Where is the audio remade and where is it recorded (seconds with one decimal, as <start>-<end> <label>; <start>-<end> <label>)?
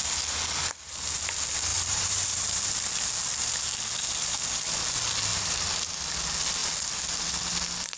0.0-1.7 recorded; 1.7-2.6 remade; 2.6-5.3 recorded; 5.3-6.0 remade; 6.0-8.0 recorded